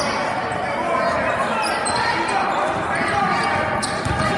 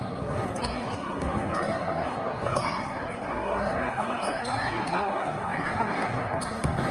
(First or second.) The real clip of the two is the first